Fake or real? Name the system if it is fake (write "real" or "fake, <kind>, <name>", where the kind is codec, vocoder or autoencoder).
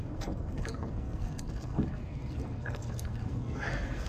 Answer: fake, codec, SNAC